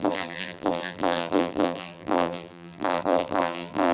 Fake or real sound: fake